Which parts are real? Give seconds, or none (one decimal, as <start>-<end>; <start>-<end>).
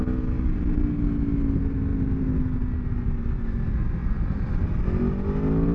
0.0-5.7